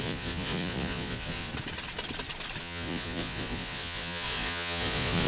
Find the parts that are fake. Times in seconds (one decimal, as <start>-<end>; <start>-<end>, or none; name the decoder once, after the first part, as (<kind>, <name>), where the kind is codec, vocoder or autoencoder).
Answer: 0.0-1.5 (vocoder, Vocos); 2.6-5.3